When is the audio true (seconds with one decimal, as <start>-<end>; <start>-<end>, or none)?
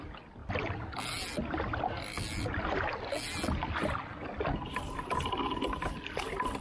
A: 0.0-6.6